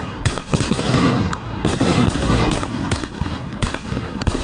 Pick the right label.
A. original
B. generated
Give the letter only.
B